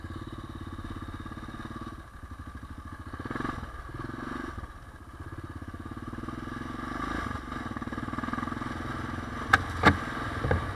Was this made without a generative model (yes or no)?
yes